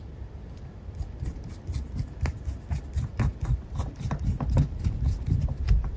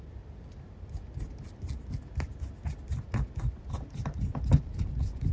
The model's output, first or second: first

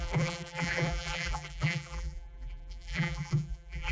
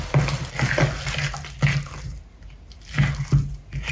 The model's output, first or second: first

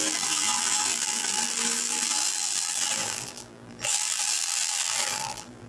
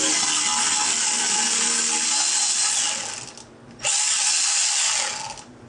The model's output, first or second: first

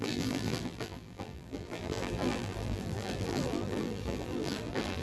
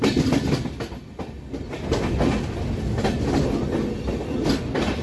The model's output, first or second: first